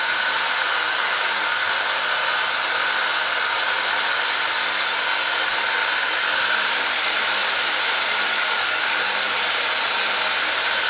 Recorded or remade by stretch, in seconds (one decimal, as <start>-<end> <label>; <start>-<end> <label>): 0.0-0.9 recorded; 0.9-1.7 remade; 1.7-8.3 recorded; 8.3-9.4 remade; 9.4-10.9 recorded